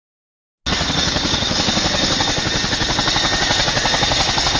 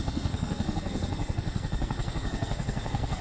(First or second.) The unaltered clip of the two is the first